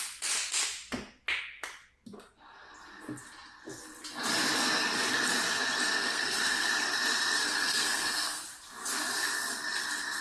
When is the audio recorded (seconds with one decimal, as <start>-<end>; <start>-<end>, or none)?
0.0-6.0; 6.7-7.4; 8.4-10.2